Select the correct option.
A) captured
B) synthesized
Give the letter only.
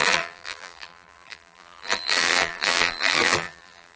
B